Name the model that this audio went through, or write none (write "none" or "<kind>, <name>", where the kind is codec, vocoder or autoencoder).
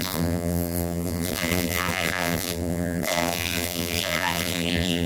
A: vocoder, BigVGAN v2